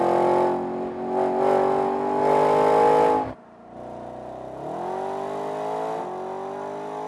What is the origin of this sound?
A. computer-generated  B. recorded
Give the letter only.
B